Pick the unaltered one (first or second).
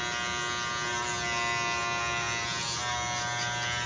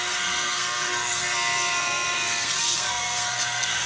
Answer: first